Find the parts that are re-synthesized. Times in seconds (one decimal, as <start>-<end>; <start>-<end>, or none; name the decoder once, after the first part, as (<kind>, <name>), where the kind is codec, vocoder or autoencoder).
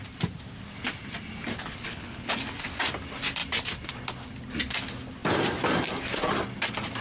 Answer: 1.5-2.4 (codec, HILCodec)